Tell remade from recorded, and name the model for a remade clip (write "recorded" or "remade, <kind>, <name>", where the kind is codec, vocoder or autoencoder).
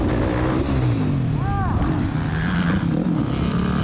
recorded